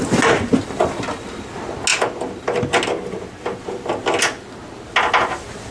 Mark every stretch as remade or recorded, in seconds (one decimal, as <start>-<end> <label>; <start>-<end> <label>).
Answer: 0.0-5.7 recorded

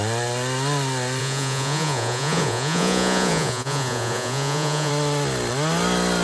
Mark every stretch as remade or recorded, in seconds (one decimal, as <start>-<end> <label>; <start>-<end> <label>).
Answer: 0.0-1.2 recorded; 1.2-4.9 remade; 4.9-6.2 recorded